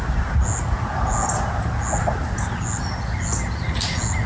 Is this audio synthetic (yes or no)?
no